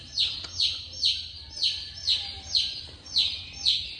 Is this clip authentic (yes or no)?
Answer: yes